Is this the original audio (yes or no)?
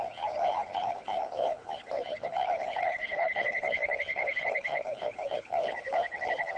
no